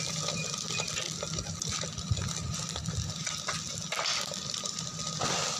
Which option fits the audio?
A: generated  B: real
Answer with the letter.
B